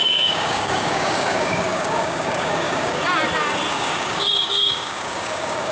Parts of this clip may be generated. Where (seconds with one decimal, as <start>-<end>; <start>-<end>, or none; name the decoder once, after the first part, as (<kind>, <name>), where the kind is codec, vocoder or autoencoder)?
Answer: 0.0-3.0 (codec, DAC); 3.7-5.7

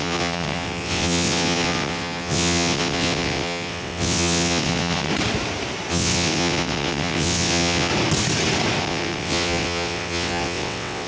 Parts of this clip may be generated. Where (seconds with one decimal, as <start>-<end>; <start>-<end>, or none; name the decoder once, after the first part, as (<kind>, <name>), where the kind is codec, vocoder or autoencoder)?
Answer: 0.0-5.1 (vocoder, WaveNeXt); 5.9-7.9; 8.8-11.1